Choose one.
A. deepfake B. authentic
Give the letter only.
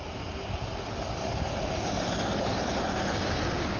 B